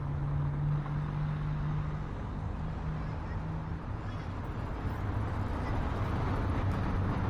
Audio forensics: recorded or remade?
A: recorded